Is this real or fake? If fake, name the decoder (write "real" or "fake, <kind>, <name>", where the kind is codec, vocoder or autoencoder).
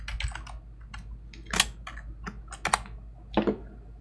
real